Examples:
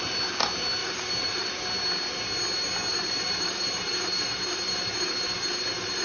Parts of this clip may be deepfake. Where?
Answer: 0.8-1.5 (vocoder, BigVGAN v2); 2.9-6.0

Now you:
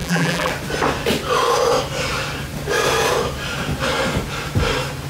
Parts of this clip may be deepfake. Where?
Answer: 0.0-0.5 (vocoder, BigVGAN v2)